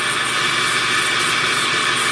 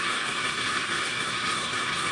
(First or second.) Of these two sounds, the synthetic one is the second